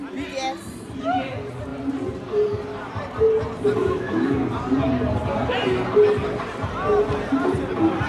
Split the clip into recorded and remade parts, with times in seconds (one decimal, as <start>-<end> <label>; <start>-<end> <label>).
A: 0.0-3.8 recorded; 3.8-4.4 remade; 4.4-8.1 recorded